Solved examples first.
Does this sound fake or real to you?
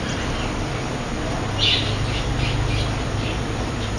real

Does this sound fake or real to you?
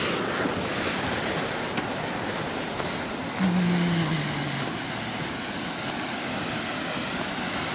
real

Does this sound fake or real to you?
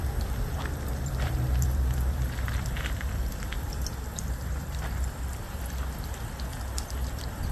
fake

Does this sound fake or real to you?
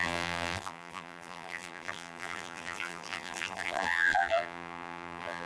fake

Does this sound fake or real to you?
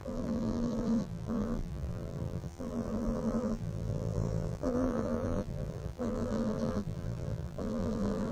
fake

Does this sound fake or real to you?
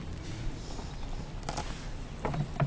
real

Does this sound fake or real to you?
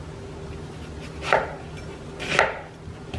real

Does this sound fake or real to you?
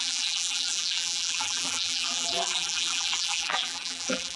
fake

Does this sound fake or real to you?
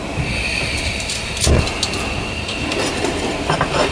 real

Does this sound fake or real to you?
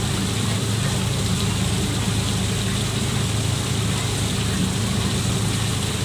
real